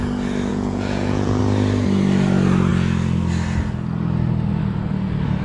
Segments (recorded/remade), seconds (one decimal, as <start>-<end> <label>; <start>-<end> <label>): 0.0-0.5 recorded; 0.5-1.4 remade; 1.4-5.4 recorded